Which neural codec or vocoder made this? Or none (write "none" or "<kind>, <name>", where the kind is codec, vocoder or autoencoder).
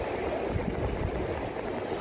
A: none